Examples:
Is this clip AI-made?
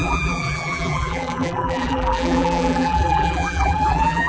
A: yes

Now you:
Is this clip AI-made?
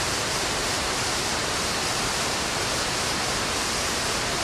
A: yes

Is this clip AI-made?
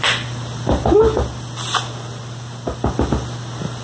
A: no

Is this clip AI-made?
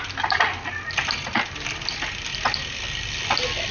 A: no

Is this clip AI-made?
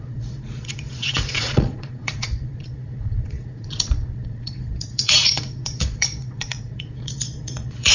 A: yes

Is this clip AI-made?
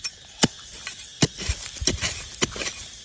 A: no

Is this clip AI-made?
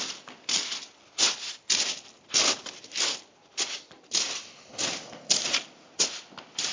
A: no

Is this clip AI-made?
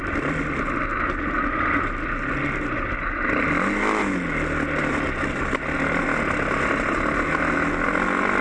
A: no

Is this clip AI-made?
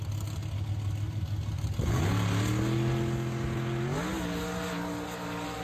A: no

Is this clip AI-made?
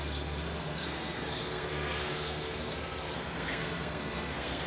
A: yes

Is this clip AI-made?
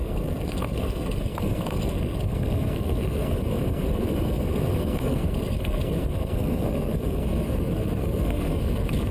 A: yes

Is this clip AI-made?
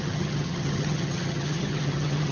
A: yes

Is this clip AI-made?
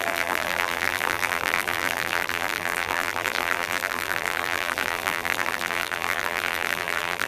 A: yes